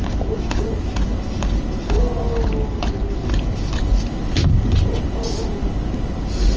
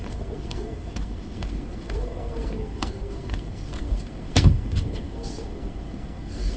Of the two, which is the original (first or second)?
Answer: first